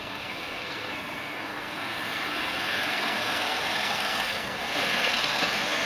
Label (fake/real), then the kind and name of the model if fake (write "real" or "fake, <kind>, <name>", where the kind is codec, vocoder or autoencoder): fake, codec, SNAC